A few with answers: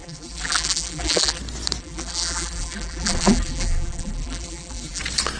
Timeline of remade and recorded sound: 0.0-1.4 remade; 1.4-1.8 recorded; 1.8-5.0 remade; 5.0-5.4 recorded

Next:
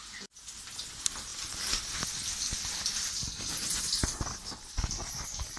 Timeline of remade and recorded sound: 0.0-5.6 recorded

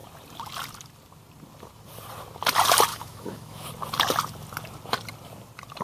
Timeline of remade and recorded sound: 0.0-2.9 recorded; 2.9-3.7 remade; 3.7-5.8 recorded

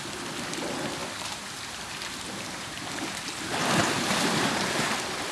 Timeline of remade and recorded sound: 0.0-5.3 recorded

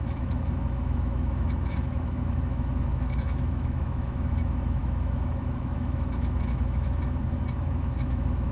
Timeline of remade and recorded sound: 0.0-8.5 remade

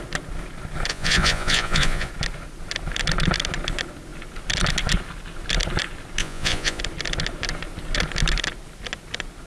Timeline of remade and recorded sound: 0.0-0.9 recorded; 0.9-2.1 remade; 2.1-6.2 recorded; 6.2-6.8 remade; 6.8-9.5 recorded